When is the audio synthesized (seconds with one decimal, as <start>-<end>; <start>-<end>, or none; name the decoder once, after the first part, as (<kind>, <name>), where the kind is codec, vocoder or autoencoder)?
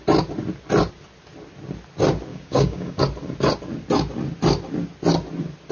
2.3-3.0 (codec, DAC)